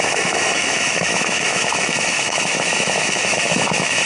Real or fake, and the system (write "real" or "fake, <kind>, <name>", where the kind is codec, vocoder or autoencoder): fake, autoencoder, DAC-VAE